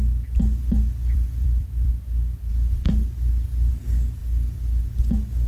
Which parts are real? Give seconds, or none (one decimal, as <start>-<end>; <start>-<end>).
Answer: 0.0-1.0; 1.9-5.5